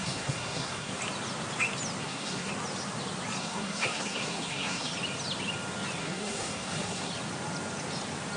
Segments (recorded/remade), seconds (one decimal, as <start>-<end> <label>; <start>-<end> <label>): 0.0-0.9 remade; 0.9-2.0 recorded; 2.0-2.5 remade; 2.5-3.4 recorded; 3.4-4.9 remade; 4.9-6.0 recorded; 6.0-7.1 remade; 7.1-8.4 recorded